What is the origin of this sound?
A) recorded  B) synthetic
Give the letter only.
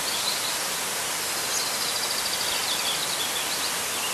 A